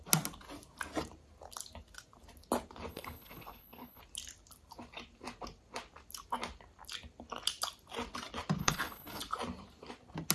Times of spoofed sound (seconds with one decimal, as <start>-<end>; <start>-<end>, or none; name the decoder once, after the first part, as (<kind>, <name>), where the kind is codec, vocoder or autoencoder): 2.9-4.0 (codec, HILCodec); 8.6-9.2